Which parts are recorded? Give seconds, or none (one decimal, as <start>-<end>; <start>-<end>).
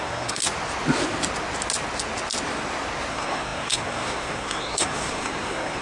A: 0.4-3.1